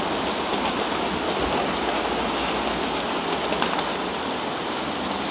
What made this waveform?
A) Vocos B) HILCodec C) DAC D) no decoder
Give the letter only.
D